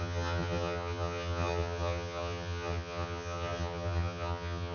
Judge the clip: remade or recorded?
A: remade